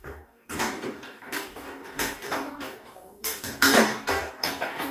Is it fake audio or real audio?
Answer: fake